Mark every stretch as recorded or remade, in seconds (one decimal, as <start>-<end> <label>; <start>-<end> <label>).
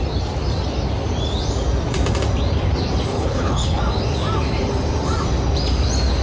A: 0.0-3.1 recorded; 3.1-3.8 remade; 3.8-6.2 recorded